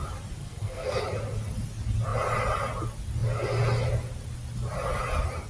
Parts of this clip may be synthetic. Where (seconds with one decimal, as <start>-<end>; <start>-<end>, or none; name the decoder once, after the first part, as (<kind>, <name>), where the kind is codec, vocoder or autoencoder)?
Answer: 0.4-1.0 (codec, SNAC)